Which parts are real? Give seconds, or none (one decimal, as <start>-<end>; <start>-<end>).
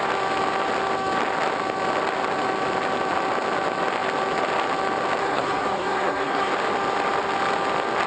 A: 0.0-5.2; 6.5-8.1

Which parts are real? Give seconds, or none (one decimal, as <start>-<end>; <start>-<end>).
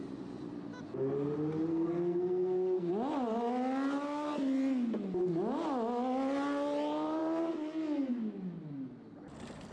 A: 0.0-1.7; 2.9-9.7